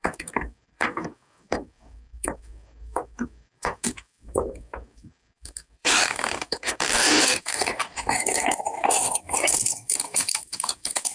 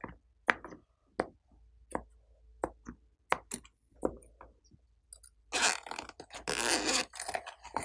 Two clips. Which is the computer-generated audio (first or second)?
first